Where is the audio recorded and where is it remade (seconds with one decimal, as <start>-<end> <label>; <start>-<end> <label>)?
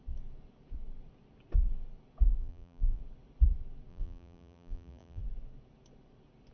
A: 0.0-2.4 recorded; 2.4-3.0 remade; 3.0-3.9 recorded; 3.9-5.2 remade; 5.2-6.5 recorded